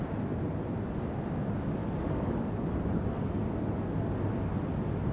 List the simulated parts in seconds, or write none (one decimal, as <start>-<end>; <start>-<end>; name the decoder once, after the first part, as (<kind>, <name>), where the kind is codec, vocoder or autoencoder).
1.8-2.6 (codec, DAC)